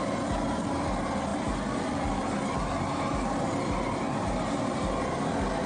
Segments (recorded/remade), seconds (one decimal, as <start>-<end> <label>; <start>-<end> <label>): 0.0-1.3 recorded; 1.3-2.4 remade; 2.4-5.7 recorded